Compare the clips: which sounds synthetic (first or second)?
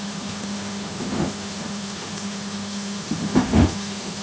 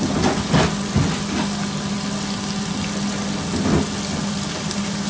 first